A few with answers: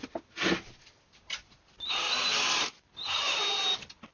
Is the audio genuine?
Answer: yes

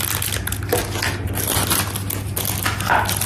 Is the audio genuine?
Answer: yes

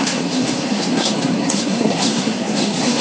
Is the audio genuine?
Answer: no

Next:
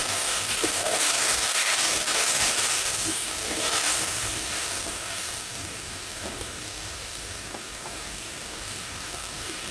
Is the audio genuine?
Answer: no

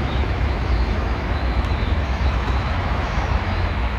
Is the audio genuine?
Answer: no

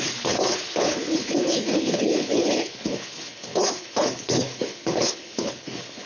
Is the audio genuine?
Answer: no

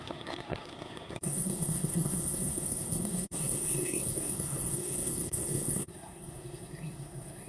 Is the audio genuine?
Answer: no